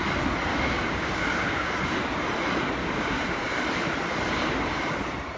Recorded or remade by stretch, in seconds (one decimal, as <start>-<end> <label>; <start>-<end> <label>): 0.0-0.5 recorded; 0.5-1.7 remade; 1.7-2.8 recorded; 2.8-3.6 remade; 3.6-5.4 recorded